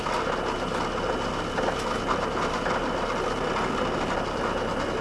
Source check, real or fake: real